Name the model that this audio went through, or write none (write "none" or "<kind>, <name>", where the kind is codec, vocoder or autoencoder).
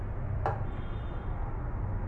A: none